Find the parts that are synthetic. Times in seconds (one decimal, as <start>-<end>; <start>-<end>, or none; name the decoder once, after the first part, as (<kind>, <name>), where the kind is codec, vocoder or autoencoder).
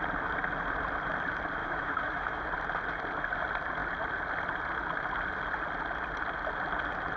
1.6-2.4 (autoencoder, DAC-VAE)